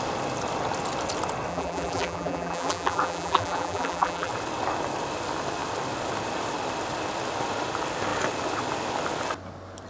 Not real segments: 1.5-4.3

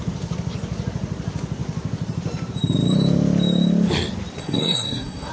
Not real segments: 4.4-5.3